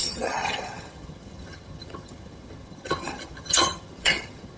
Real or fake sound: fake